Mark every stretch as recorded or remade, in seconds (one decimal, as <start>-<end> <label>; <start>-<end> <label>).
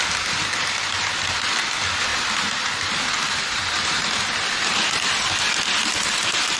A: 0.0-6.6 recorded